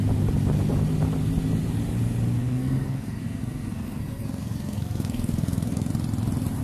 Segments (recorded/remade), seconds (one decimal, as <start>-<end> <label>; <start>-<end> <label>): 0.0-2.4 recorded; 2.4-5.9 remade; 5.9-6.6 recorded